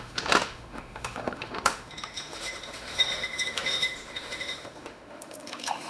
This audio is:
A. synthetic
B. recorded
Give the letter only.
A